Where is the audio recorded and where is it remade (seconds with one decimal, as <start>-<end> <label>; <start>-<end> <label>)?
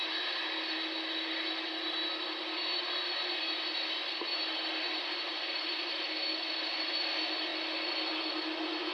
0.0-8.9 recorded